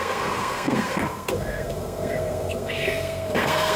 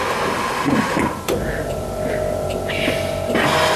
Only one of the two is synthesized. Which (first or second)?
first